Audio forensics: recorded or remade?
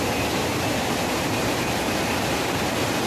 recorded